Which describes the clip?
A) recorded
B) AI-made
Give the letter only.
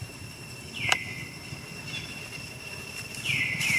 B